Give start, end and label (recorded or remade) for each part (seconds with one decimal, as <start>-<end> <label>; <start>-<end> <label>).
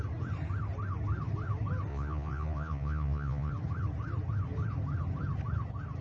0.0-1.9 recorded; 1.9-3.5 remade; 3.5-6.0 recorded